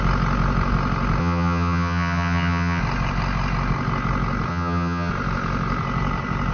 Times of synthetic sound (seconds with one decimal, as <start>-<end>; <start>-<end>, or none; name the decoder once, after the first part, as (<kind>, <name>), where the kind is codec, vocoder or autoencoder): 1.2-2.8 (vocoder, HiFi-GAN); 4.5-5.1